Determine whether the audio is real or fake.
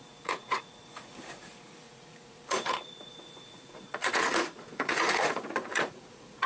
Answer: fake